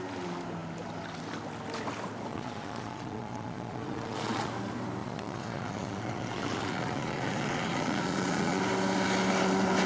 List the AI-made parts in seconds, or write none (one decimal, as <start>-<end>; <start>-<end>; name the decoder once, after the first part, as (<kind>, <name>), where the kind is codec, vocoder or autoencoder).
2.3-4.5 (vocoder, Vocos); 5.0-8.6